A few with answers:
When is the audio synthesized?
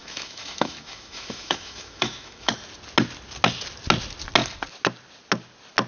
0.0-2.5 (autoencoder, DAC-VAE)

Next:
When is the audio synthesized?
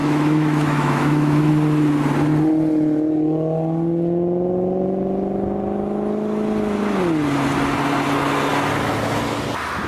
0.0-1.5 (autoencoder, DAC-VAE)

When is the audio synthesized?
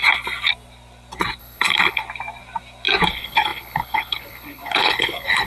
1.4-2.0 (codec, HILCodec); 3.1-5.5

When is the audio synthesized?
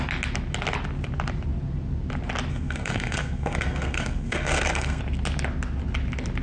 2.5-5.0 (codec, SNAC)